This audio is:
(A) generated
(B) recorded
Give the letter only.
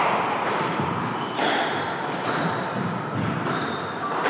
B